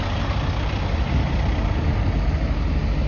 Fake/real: real